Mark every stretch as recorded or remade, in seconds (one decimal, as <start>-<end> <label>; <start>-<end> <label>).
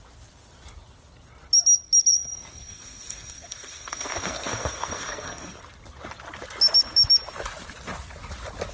0.0-2.1 recorded; 2.1-5.6 remade; 5.6-8.7 recorded